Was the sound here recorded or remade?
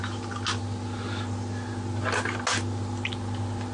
recorded